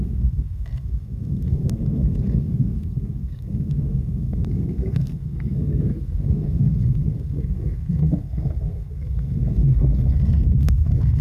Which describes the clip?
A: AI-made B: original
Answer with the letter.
A